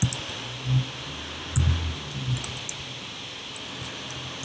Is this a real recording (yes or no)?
yes